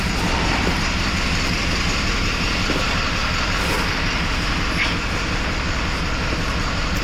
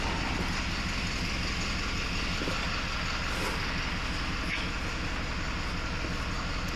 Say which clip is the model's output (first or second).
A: first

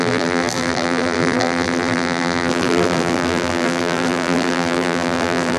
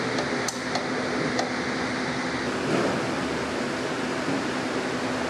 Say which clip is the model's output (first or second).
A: first